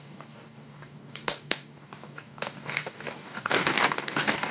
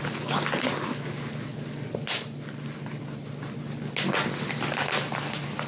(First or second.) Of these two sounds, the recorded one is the second